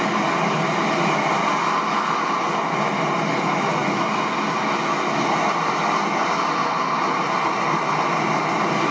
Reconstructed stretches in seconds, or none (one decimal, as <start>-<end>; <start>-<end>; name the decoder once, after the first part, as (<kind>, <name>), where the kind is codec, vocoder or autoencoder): none